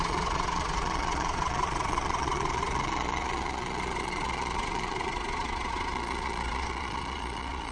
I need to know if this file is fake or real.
fake